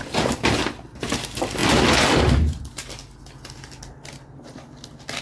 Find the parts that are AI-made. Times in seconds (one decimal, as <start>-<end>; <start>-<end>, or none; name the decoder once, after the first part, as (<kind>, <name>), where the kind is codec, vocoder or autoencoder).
none